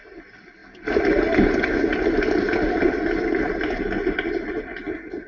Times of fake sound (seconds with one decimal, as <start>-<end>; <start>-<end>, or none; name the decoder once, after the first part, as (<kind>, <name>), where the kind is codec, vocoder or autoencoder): none